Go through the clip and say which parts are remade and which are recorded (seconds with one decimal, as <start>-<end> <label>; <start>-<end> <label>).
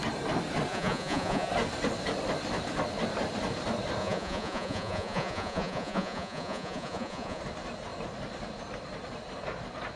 0.0-0.7 recorded; 0.7-1.5 remade; 1.5-4.0 recorded; 4.0-7.4 remade; 7.4-10.0 recorded